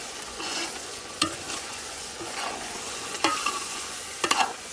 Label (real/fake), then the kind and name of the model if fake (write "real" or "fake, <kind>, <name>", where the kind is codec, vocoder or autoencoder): fake, vocoder, Vocos